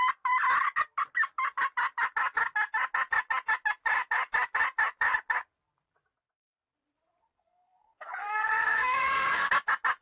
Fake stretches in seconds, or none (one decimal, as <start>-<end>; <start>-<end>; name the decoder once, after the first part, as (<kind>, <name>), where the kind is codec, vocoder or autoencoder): 7.3-9.5 (codec, SNAC)